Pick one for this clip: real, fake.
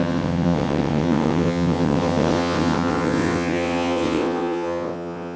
fake